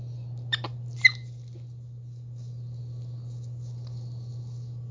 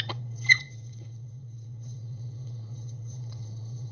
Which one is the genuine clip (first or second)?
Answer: first